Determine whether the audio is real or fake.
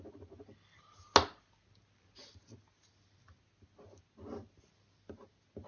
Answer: real